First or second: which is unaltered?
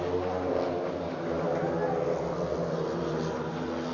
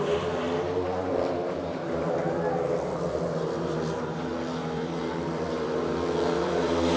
first